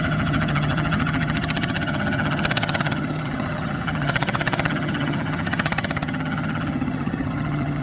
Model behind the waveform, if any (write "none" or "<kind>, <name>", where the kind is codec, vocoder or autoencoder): vocoder, HiFi-GAN